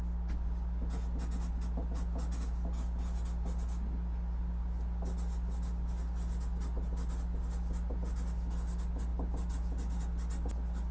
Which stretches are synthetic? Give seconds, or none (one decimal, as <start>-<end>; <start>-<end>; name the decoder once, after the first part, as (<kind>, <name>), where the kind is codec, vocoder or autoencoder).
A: none